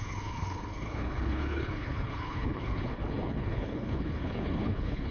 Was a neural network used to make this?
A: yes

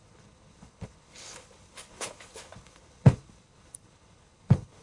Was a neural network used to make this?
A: yes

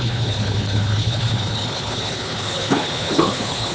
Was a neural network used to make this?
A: yes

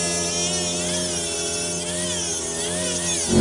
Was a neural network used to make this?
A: no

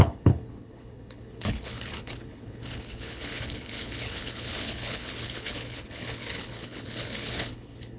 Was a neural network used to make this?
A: yes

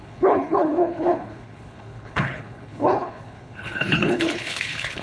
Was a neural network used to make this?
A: yes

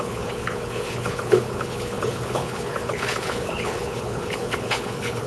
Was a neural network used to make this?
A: yes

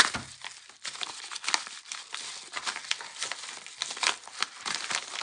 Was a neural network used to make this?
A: no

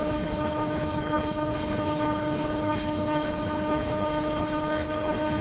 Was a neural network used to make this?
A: yes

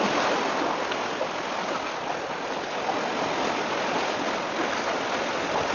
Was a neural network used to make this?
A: no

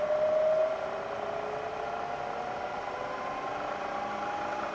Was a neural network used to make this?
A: no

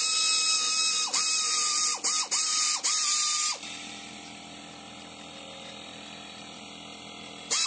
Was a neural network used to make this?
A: no